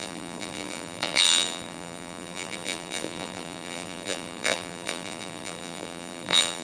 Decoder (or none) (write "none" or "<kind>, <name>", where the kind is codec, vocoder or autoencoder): vocoder, BigVGAN v2